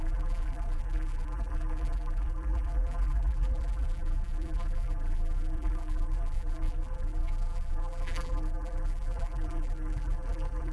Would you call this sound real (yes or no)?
no